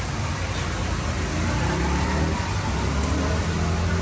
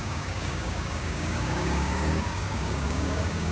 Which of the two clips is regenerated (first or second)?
second